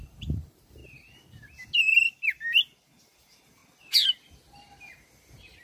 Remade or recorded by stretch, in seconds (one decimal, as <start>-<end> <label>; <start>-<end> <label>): 0.0-0.8 remade; 0.8-3.0 recorded; 3.0-3.6 remade; 3.6-4.9 recorded; 4.9-5.6 remade

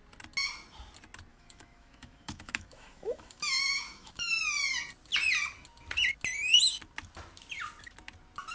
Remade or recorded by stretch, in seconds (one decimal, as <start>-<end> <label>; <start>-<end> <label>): 0.0-1.3 recorded; 1.3-4.3 remade; 4.3-8.5 recorded